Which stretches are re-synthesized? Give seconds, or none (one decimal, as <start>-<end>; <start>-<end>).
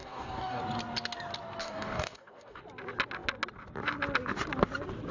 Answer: 0.0-0.6; 1.6-2.6